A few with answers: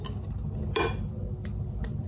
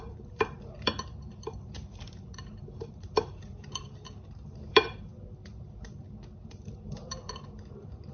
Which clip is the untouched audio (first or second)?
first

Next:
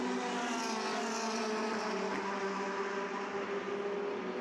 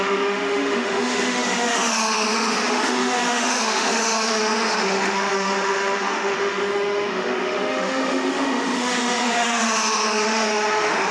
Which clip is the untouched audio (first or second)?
first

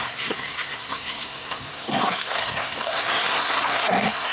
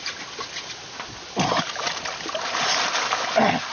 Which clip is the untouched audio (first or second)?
second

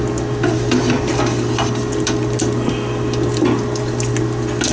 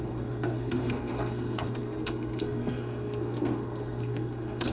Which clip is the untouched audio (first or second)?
first